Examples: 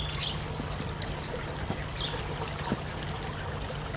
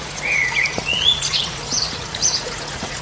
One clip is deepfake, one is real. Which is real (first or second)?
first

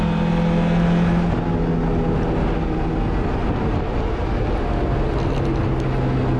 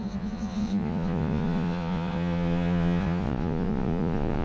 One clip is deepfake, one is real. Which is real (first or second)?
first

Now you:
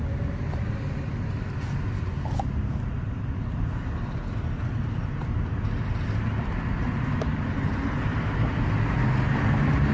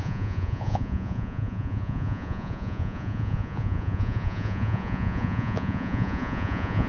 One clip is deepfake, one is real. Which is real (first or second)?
first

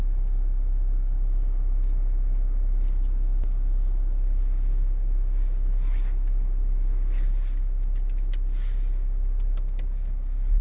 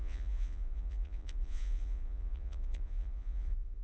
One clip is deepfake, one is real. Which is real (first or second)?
first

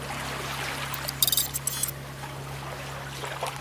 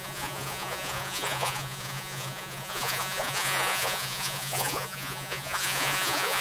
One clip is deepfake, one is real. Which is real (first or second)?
first